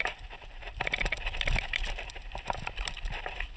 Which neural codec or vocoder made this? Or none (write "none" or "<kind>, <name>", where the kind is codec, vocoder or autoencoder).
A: vocoder, BigVGAN v2